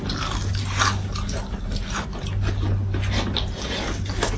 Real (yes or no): yes